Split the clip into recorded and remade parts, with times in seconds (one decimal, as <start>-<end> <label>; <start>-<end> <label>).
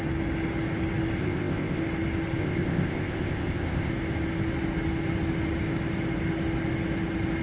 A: 0.0-1.2 recorded; 1.2-1.8 remade; 1.8-2.4 recorded; 2.4-3.9 remade; 3.9-7.4 recorded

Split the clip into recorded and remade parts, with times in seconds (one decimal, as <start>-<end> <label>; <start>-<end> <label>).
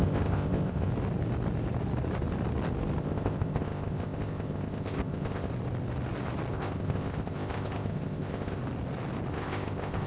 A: 0.0-0.9 remade; 0.9-3.0 recorded; 3.0-5.5 remade; 5.5-6.5 recorded; 6.5-8.6 remade; 8.6-9.3 recorded; 9.3-10.1 remade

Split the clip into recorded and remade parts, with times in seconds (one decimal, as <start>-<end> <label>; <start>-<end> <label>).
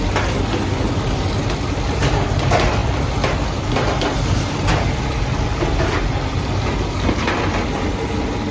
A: 0.0-8.5 recorded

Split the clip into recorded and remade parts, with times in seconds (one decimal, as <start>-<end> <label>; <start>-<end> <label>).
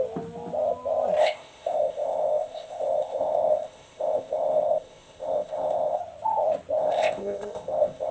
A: 0.0-1.2 recorded; 1.2-6.0 remade; 6.0-6.8 recorded; 6.8-8.1 remade